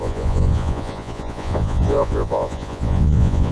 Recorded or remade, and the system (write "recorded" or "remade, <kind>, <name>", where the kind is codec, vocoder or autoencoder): remade, vocoder, Vocos